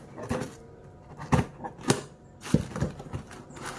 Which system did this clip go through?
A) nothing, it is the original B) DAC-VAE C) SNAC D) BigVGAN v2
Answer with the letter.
A